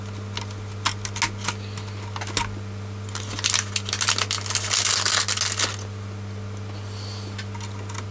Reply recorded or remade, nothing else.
recorded